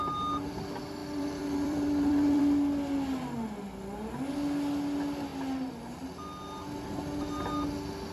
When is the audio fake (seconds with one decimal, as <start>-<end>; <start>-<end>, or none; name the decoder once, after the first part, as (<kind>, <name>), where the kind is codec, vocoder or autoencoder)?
1.0-2.4 (vocoder, BigVGAN v2)